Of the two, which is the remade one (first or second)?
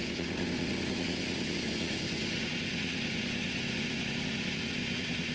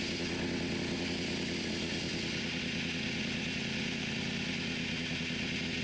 first